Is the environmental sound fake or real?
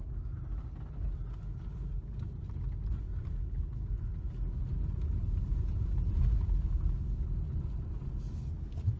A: real